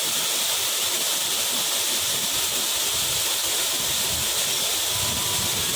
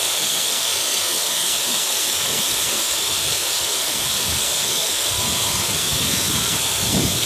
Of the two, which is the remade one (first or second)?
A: second